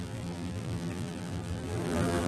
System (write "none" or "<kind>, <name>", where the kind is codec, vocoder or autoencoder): vocoder, BigVGAN v2